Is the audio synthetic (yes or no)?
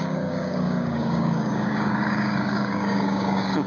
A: yes